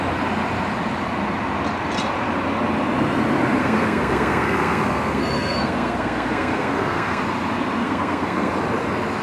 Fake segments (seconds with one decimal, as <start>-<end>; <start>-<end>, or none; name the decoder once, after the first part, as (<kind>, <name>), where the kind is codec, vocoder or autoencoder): 3.6-7.2 (codec, SNAC); 7.8-8.5